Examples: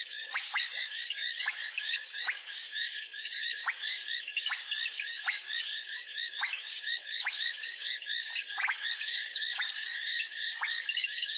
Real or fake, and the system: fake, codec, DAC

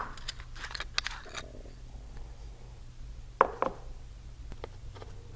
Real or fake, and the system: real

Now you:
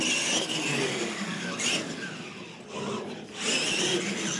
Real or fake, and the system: real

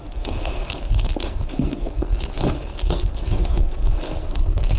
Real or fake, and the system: fake, codec, SNAC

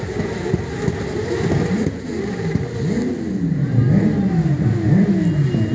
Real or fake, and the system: real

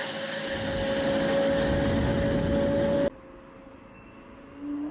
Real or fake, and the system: real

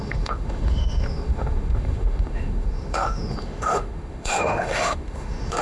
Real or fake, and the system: fake, autoencoder, DAC-VAE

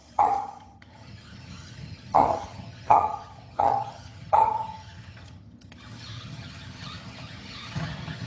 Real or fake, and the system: fake, vocoder, HiFi-GAN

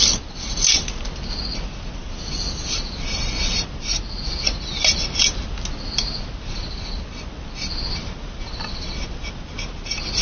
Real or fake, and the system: real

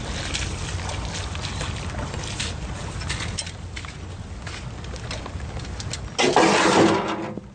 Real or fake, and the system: real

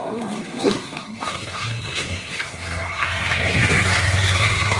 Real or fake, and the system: fake, codec, SNAC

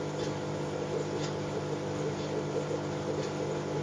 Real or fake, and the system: real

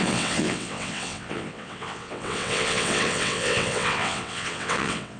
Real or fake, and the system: fake, vocoder, WaveNeXt